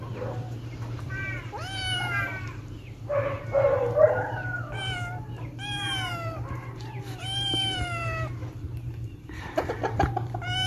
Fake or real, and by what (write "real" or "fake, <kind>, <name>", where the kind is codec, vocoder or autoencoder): fake, vocoder, BigVGAN v2